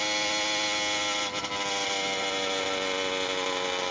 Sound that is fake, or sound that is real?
real